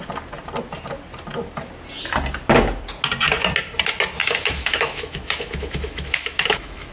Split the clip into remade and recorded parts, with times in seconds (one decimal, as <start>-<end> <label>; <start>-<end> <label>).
0.0-4.2 recorded; 4.2-6.9 remade